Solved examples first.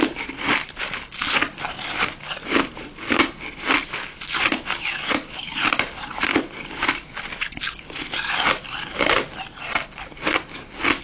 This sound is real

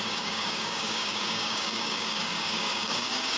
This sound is fake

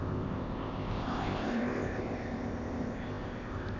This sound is fake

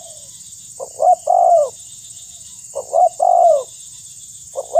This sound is fake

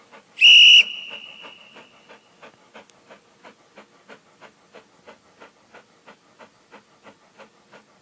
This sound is real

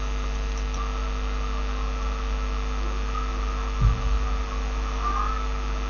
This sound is real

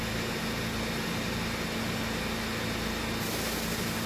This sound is real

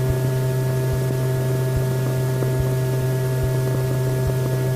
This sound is real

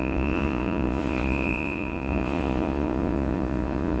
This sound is fake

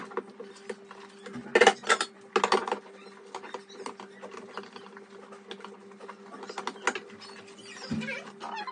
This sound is real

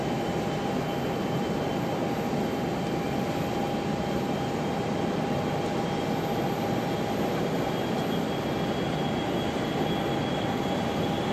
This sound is real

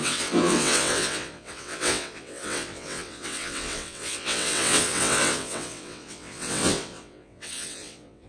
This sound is fake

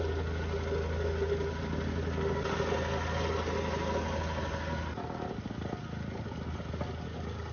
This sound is real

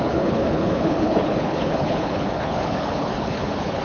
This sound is fake